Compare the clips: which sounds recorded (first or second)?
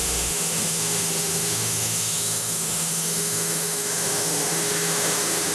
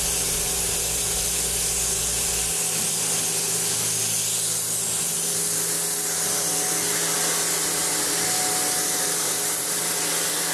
second